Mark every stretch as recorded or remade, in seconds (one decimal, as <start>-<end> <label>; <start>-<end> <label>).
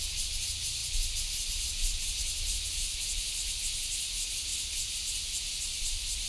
0.0-6.3 remade